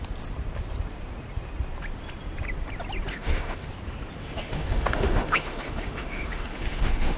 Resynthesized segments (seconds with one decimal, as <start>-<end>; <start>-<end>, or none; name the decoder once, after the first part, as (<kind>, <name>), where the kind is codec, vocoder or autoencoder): 3.1-3.7 (autoencoder, DAC-VAE); 4.2-7.2